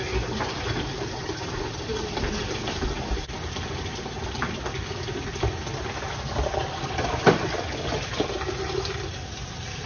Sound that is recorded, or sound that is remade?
recorded